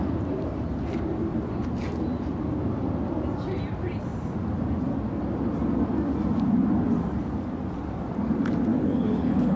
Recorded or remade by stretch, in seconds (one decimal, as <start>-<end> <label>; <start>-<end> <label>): 0.0-8.7 recorded; 8.7-9.6 remade